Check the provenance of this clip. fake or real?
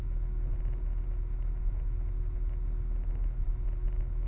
real